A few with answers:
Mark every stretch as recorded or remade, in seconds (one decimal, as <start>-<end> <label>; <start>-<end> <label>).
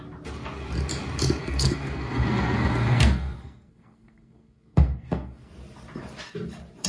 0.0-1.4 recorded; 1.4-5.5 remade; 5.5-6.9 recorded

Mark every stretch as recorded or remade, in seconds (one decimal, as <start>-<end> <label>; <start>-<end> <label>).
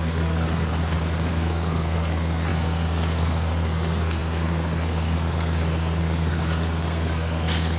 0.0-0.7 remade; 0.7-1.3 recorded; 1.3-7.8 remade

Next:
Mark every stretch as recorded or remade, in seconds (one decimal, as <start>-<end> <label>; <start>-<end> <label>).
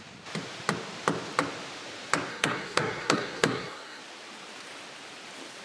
0.0-2.3 recorded; 2.3-4.0 remade; 4.0-5.6 recorded